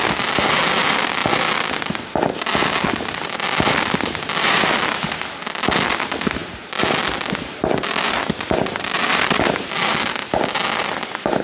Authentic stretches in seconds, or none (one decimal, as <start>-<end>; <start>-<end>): 0.0-9.1; 9.7-11.4

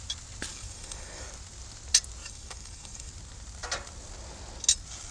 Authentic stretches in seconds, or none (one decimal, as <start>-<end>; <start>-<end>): 0.0-0.5; 1.3-2.2; 3.1-5.1

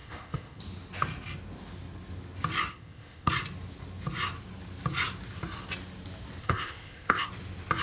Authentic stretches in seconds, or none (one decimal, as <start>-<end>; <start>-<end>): 0.6-2.7; 3.3-6.4; 7.3-7.8